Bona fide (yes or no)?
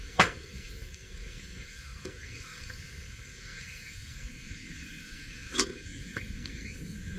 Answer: no